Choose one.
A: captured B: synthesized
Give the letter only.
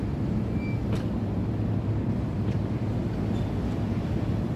A